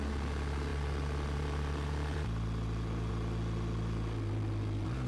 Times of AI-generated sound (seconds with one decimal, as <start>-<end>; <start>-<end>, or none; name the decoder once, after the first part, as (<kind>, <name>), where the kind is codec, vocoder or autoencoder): 0.7-3.1 (vocoder, BigVGAN v2)